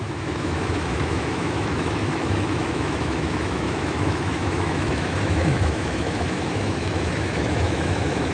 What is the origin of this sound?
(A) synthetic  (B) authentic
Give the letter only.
A